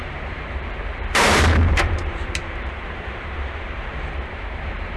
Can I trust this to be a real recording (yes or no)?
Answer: no